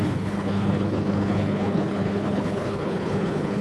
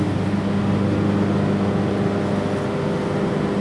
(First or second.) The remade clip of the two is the first